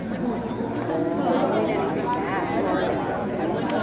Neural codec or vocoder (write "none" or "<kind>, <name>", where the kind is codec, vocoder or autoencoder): none